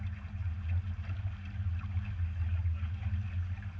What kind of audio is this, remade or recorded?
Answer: recorded